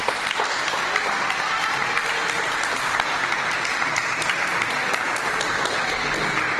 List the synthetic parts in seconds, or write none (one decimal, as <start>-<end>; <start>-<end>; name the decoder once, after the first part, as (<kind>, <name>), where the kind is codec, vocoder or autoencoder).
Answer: 0.0-4.0 (vocoder, BigVGAN v2)

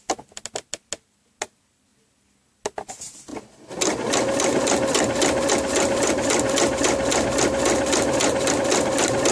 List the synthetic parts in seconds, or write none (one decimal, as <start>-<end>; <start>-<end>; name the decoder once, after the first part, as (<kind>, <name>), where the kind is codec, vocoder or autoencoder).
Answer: none

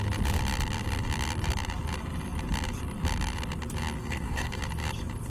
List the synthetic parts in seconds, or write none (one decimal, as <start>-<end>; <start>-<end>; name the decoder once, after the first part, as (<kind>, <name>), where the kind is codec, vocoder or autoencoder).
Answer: 4.0-4.6 (codec, DAC)

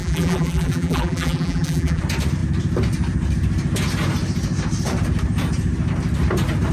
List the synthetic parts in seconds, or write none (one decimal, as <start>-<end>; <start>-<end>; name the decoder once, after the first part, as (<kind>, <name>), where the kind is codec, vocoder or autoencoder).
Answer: 0.0-2.0 (vocoder, BigVGAN v2)

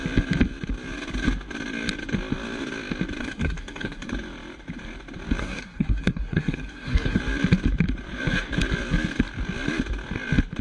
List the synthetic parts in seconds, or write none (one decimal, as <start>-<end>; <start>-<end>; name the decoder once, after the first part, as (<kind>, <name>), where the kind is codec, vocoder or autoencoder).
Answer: 3.2-4.1 (codec, SNAC); 5.4-7.2

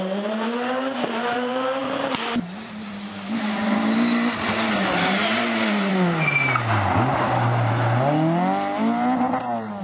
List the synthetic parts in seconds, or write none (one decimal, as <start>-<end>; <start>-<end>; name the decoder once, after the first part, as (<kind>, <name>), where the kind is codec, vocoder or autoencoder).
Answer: 0.0-5.9 (vocoder, BigVGAN v2)

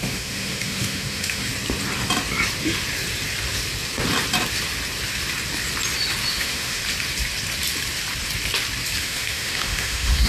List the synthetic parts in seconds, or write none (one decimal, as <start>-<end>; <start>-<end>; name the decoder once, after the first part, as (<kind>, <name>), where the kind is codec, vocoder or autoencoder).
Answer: 0.0-1.5 (autoencoder, DAC-VAE); 6.3-6.8; 9.0-10.3